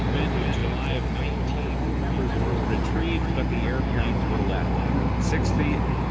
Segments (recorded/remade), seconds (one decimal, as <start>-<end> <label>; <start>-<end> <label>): 0.0-6.1 recorded